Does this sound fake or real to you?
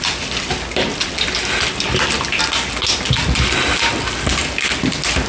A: real